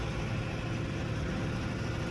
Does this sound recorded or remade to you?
recorded